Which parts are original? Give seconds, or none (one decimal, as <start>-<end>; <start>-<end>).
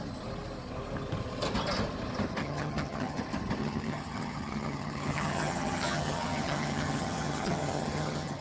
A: 0.0-2.4; 3.2-3.6